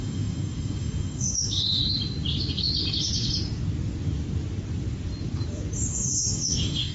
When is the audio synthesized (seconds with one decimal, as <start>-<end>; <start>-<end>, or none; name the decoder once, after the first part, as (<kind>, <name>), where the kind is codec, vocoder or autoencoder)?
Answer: 0.0-1.8 (codec, DAC); 5.9-6.9

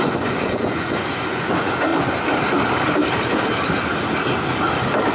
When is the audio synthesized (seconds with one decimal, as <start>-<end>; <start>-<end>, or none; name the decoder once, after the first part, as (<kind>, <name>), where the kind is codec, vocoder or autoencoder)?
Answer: 0.0-1.9 (vocoder, Vocos)

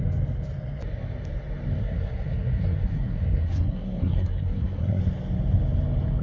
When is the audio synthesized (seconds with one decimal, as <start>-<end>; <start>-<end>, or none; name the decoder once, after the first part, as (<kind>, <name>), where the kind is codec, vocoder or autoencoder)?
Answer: 1.8-5.0 (codec, SNAC)

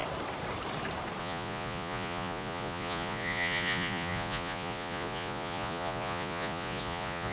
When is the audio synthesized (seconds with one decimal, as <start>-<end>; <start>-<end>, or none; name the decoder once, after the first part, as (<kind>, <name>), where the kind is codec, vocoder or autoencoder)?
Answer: 1.2-7.3 (vocoder, Vocos)